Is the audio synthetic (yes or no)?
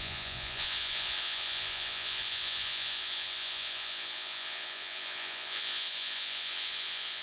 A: yes